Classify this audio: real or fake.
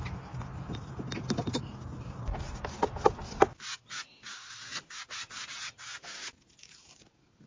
real